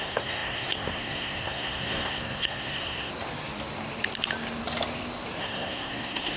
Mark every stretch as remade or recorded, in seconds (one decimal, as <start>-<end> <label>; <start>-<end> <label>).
0.0-3.1 remade; 3.1-5.4 recorded; 5.4-6.4 remade

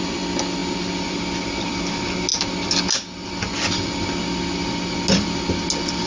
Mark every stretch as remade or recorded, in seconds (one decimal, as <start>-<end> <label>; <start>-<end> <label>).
0.0-6.1 recorded

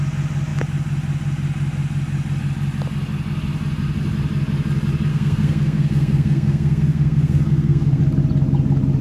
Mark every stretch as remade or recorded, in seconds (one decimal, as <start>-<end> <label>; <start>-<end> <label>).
0.0-5.1 recorded; 5.1-8.0 remade; 8.0-9.0 recorded

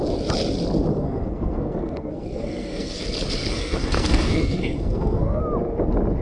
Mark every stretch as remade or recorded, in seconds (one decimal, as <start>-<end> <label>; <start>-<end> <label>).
0.0-0.9 recorded; 0.9-3.0 remade; 3.0-3.4 recorded; 3.4-5.4 remade; 5.4-6.2 recorded

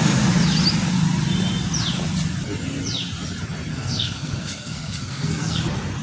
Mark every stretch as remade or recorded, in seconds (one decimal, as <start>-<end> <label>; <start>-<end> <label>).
0.0-3.7 recorded; 3.7-5.6 remade; 5.6-6.0 recorded

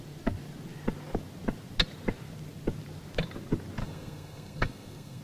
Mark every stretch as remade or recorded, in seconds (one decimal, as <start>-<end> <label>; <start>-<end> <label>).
0.0-3.8 recorded; 3.8-5.2 remade

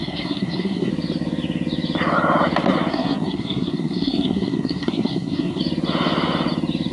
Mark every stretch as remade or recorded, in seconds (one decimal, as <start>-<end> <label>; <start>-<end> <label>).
0.0-0.9 remade; 0.9-2.9 recorded; 2.9-5.6 remade; 5.6-6.9 recorded